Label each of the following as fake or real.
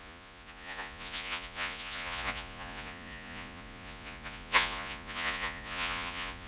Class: fake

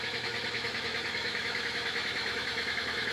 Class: fake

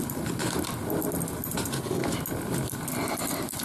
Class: real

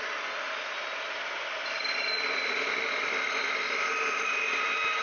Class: real